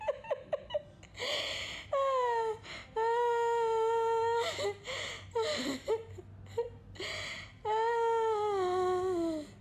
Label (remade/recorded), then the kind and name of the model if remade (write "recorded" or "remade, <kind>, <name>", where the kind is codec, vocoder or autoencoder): recorded